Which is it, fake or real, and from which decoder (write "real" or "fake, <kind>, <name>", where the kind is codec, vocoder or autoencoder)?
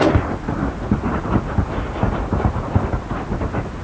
real